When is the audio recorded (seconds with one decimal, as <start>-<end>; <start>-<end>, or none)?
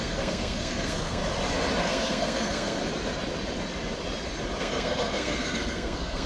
1.2-1.8; 2.8-4.6